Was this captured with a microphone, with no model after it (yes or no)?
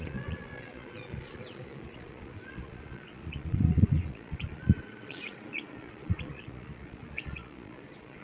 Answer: no